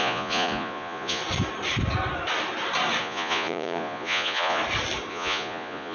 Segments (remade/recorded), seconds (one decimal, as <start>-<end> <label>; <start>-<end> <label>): 0.0-1.2 remade; 1.2-3.0 recorded; 3.0-4.6 remade; 4.6-5.1 recorded; 5.1-5.9 remade